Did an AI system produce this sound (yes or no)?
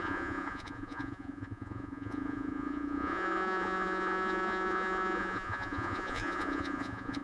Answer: yes